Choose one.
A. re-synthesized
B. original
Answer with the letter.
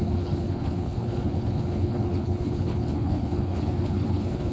A